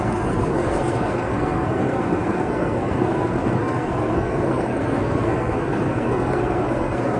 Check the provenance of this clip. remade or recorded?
remade